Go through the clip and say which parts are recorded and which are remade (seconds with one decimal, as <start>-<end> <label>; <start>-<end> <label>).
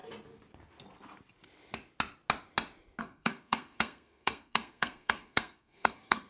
0.0-3.0 recorded; 3.0-6.3 remade